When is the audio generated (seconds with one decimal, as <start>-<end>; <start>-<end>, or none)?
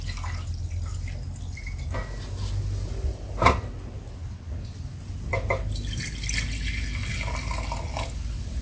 none